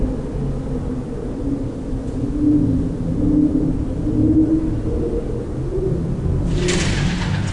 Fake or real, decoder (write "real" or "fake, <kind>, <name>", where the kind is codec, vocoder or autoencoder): real